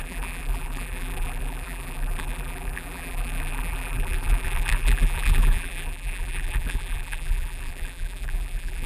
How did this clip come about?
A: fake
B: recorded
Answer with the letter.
A